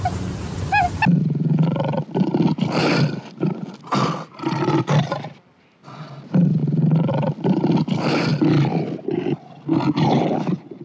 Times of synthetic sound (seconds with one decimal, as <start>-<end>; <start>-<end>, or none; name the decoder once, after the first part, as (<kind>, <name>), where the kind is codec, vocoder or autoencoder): none